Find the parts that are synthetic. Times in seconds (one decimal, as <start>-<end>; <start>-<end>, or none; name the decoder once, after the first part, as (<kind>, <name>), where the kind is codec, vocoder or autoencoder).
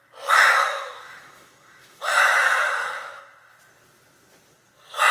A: 0.6-3.2 (autoencoder, DAC-VAE)